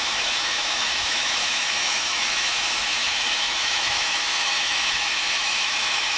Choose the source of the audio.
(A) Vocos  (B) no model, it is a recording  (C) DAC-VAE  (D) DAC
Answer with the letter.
C